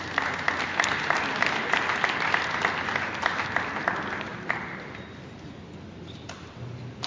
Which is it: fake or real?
real